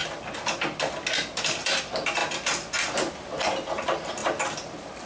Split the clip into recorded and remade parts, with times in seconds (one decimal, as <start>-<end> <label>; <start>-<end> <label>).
0.0-5.1 recorded